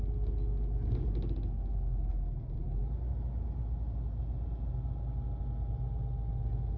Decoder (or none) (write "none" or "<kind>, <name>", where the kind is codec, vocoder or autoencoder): none